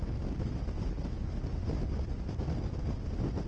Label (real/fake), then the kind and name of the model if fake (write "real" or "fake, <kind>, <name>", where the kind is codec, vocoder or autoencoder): real